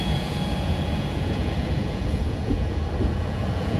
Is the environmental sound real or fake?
fake